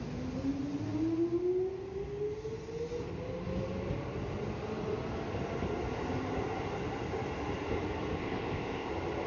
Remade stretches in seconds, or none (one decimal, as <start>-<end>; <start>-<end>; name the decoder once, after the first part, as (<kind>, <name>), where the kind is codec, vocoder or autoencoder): 8.2-8.9 (codec, ZipCodec)